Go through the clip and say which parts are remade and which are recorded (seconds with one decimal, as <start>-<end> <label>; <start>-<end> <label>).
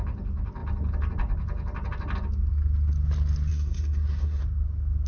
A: 0.0-3.5 recorded; 3.5-4.4 remade; 4.4-5.1 recorded